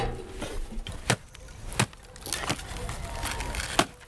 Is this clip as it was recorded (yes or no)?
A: yes